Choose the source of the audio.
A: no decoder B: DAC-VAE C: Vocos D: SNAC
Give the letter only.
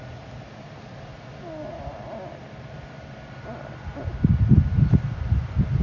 A